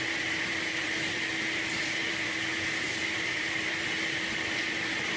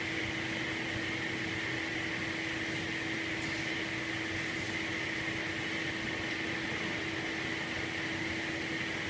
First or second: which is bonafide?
second